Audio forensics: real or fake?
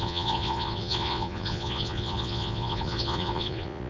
fake